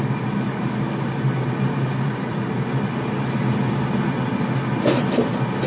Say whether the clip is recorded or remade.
recorded